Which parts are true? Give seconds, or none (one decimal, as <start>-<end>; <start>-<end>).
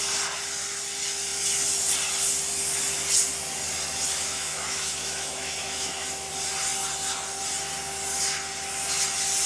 0.0-4.3; 6.3-9.5